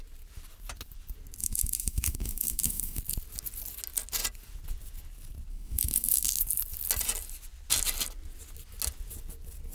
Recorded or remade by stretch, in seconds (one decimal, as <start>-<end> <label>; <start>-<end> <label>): 0.0-1.4 recorded; 1.4-3.0 remade; 3.0-5.5 recorded; 5.5-6.3 remade; 6.3-9.7 recorded